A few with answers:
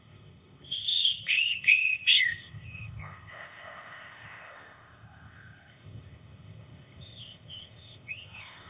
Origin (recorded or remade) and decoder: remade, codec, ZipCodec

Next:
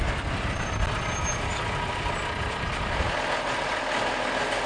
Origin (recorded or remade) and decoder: recorded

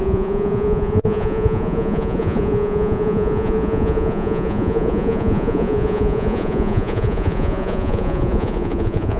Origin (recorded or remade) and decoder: remade, vocoder, Vocos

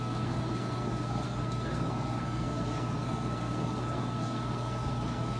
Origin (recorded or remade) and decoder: remade, codec, SNAC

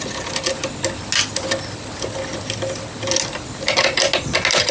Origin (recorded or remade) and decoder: recorded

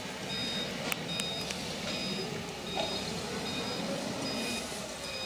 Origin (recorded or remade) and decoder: recorded